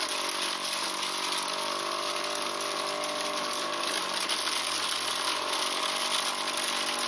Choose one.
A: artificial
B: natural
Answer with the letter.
B